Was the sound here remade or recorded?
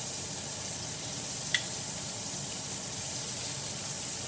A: recorded